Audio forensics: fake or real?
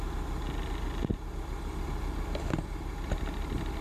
real